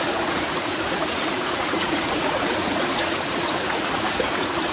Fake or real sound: fake